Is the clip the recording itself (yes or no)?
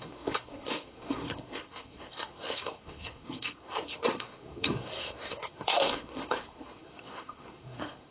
no